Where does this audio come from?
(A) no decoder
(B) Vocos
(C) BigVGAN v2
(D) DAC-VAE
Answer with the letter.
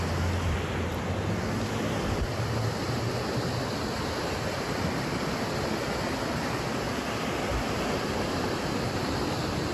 A